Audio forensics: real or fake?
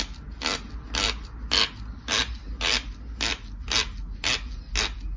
real